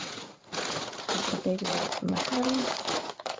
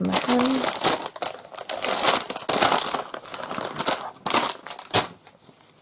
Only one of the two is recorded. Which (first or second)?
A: second